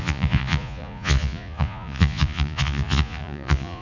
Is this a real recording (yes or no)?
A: no